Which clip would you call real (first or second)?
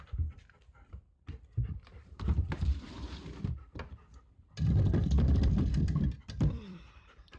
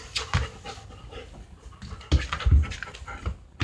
second